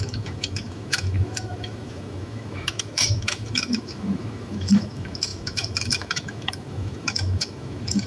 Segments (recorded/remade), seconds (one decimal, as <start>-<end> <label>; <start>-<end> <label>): 0.0-8.1 remade